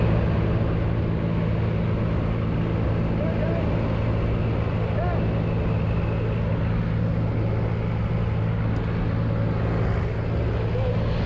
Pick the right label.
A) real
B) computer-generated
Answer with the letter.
A